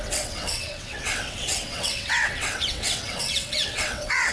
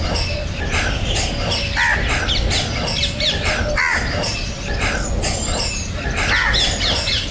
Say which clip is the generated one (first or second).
first